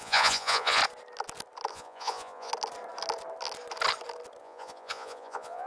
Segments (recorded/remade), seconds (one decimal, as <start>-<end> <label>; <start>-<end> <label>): 0.0-0.8 remade; 0.8-1.7 recorded; 1.7-2.5 remade; 2.5-4.4 recorded; 4.4-5.7 remade